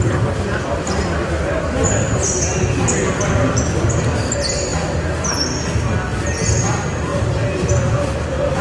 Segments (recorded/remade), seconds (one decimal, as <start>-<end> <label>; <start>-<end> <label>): 0.0-8.6 recorded